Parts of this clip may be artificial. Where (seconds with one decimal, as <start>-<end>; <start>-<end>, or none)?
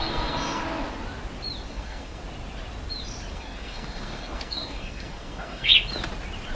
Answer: 0.0-0.6; 1.7-2.2; 3.3-5.7